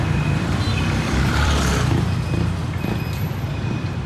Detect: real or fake fake